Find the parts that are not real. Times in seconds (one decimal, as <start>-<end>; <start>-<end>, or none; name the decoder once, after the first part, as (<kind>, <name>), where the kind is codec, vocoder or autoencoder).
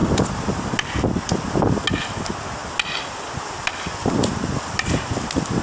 none